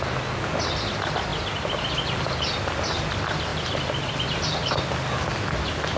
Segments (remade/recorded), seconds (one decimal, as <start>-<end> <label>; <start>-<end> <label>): 0.0-6.0 recorded